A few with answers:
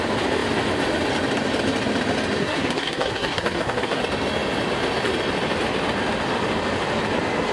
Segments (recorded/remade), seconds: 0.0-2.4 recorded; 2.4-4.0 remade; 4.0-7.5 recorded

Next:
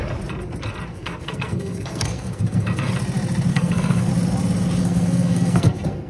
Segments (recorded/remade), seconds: 0.0-0.9 recorded; 0.9-2.9 remade; 2.9-3.5 recorded; 3.5-4.1 remade; 4.1-4.8 recorded; 4.8-6.1 remade

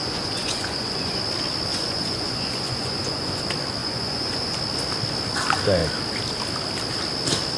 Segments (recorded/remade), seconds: 0.0-1.2 remade; 1.2-1.7 recorded; 1.7-3.4 remade; 3.4-3.8 recorded; 3.8-4.6 remade; 4.6-7.6 recorded

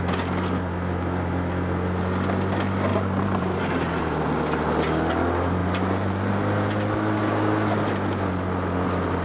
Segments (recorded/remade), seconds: 0.0-2.9 recorded; 2.9-4.0 remade; 4.0-5.6 recorded; 5.6-6.3 remade; 6.3-9.2 recorded

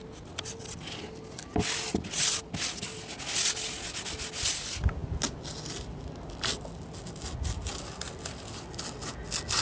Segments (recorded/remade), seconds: 0.0-9.6 recorded

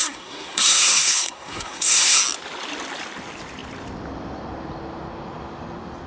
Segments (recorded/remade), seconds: 0.0-2.2 remade; 2.2-6.1 recorded